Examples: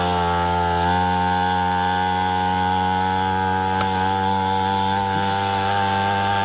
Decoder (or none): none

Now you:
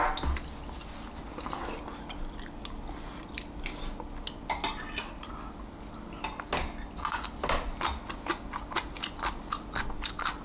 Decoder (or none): none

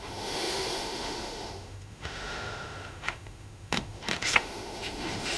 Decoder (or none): autoencoder, DAC-VAE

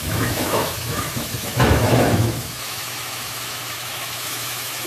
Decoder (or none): autoencoder, DAC-VAE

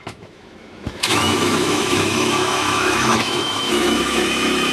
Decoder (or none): autoencoder, DAC-VAE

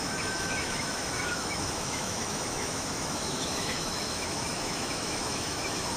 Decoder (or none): autoencoder, DAC-VAE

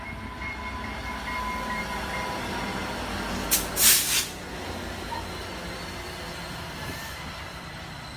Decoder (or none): none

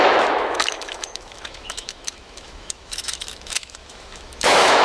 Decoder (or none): autoencoder, DAC-VAE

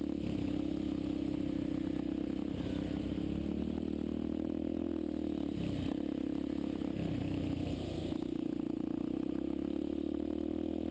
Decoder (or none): none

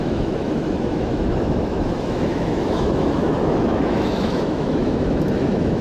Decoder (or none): autoencoder, DAC-VAE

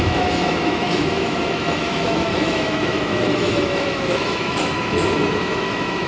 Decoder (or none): autoencoder, DAC-VAE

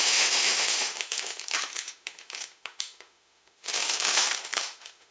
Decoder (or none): autoencoder, DAC-VAE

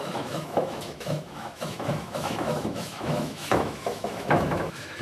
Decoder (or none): autoencoder, DAC-VAE